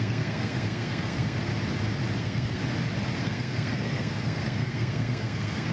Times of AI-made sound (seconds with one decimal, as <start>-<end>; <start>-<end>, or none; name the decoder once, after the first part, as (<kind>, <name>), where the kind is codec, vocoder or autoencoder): 0.0-1.5 (codec, SNAC); 2.2-2.6; 3.2-5.7